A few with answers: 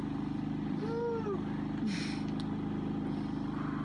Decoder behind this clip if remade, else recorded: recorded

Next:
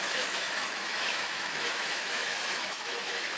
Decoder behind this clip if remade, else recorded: remade, autoencoder, DAC-VAE